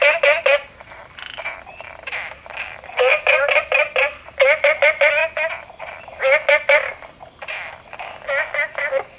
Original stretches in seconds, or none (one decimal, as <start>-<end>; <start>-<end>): 0.0-9.2